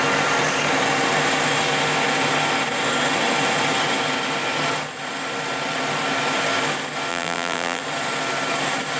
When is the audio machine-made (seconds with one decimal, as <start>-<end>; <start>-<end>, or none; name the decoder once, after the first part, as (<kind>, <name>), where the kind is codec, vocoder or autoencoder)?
7.1-7.8 (vocoder, BigVGAN v2)